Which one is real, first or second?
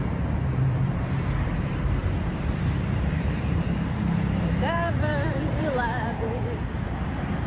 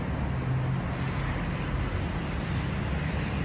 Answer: second